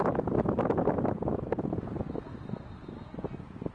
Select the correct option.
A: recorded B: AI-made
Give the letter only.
A